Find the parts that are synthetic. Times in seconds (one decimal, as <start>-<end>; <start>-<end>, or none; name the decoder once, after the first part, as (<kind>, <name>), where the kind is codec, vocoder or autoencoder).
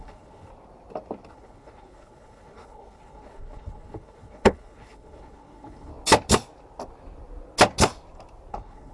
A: 0.0-0.5 (codec, HILCodec); 1.3-5.9; 8.5-8.9